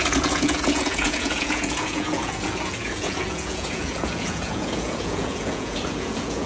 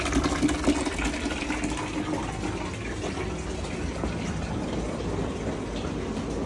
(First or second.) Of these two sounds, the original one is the second